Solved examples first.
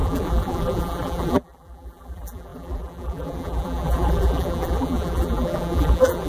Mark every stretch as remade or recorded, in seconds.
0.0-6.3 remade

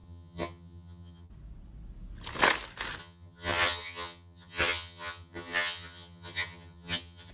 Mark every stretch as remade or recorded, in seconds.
0.0-1.3 remade; 1.3-3.0 recorded; 3.0-7.3 remade